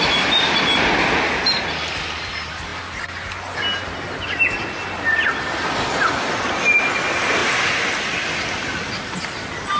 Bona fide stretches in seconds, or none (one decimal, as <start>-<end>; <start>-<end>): 0.0-9.8